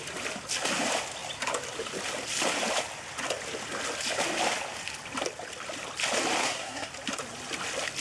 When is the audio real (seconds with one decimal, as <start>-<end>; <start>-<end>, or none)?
0.0-6.4; 6.9-8.0